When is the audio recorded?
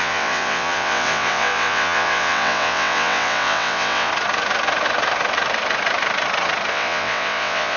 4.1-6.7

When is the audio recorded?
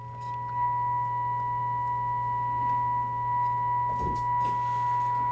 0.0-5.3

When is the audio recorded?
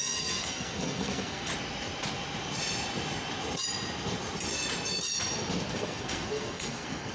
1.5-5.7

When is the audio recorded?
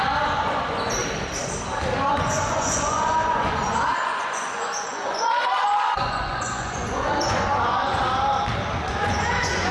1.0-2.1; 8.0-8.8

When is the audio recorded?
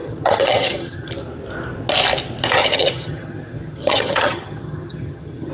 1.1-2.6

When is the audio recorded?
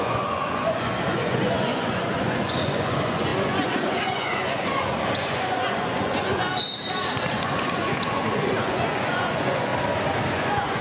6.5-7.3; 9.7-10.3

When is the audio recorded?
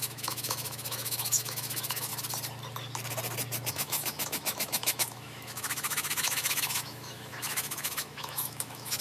2.1-3.7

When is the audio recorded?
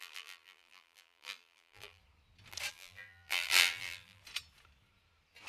2.0-2.7; 4.2-5.5